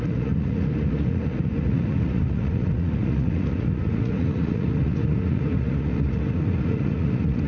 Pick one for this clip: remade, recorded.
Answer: remade